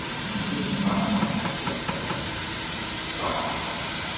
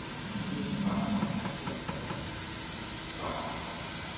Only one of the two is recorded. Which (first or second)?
second